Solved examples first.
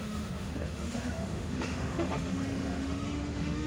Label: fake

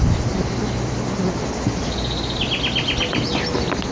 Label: real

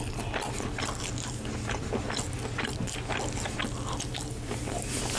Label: real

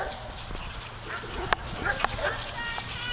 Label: real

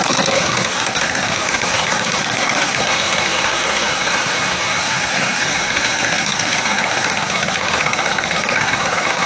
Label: fake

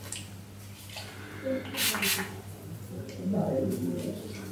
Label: real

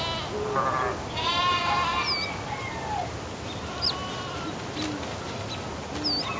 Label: real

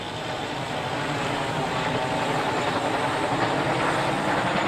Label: real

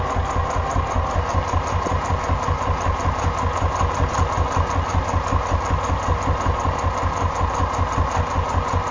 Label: real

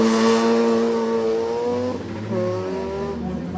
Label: real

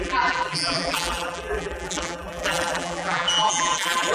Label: fake